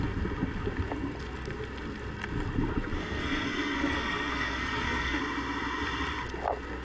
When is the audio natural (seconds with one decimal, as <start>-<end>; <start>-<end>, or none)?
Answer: 0.0-3.0; 5.2-6.8